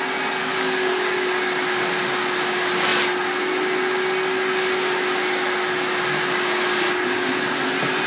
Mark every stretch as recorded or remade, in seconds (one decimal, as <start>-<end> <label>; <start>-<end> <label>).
0.0-0.4 recorded; 0.4-1.3 remade; 1.3-8.1 recorded